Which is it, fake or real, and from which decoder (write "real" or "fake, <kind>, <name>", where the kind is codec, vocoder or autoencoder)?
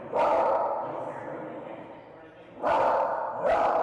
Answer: fake, vocoder, BigVGAN v2